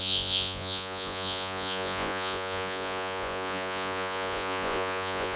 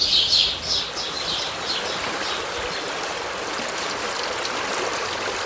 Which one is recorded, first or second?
second